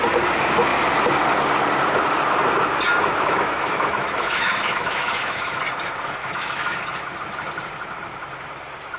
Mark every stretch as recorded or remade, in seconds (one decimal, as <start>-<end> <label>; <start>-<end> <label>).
0.0-2.9 recorded; 2.9-5.6 remade; 5.6-6.2 recorded; 6.2-6.8 remade; 6.8-9.0 recorded